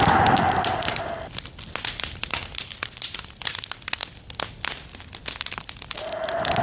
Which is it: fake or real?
real